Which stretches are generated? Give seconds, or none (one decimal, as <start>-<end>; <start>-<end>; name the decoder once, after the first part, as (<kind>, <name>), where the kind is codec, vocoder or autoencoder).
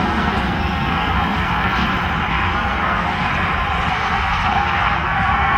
0.0-1.8 (codec, SNAC); 2.3-3.3; 3.9-5.6